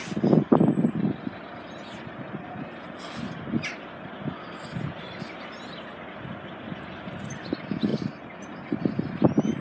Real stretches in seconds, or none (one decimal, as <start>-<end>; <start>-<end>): 0.0-9.6